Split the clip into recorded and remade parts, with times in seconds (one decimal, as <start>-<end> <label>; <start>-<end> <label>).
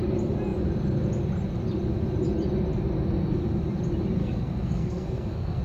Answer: 0.0-4.2 recorded; 4.2-5.6 remade